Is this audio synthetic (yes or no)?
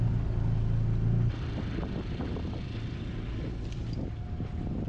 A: no